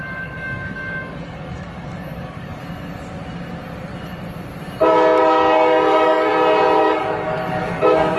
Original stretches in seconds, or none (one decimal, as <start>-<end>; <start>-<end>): 2.6-5.2; 6.3-6.8